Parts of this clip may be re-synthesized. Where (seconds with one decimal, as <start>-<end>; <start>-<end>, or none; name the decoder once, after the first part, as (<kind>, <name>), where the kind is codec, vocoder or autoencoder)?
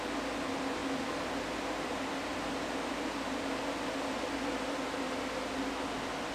none